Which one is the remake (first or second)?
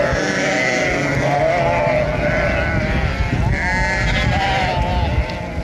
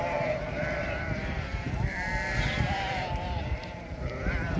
second